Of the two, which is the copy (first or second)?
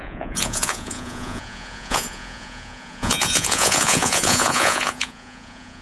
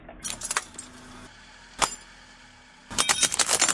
first